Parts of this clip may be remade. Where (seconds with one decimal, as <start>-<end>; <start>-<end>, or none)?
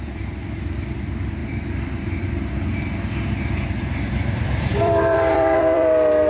0.0-6.3